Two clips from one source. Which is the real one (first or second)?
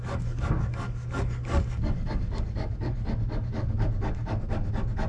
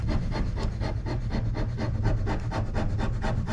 second